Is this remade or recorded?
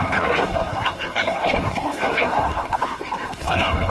remade